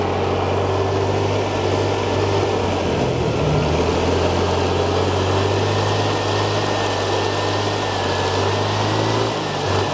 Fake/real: real